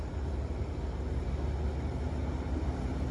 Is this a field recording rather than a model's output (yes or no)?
yes